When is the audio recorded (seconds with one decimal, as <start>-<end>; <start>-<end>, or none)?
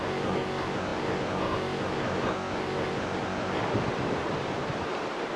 3.6-5.4